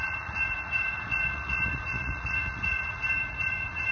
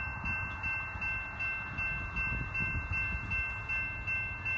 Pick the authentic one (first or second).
second